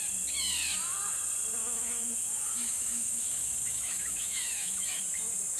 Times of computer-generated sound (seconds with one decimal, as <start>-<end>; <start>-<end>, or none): 1.6-5.0